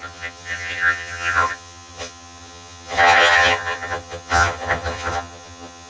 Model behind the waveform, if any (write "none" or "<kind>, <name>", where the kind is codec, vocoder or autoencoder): vocoder, HiFi-GAN